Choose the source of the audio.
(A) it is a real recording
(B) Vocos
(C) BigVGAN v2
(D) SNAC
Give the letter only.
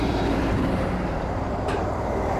C